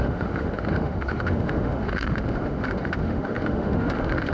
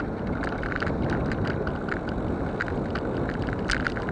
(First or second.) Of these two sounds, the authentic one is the second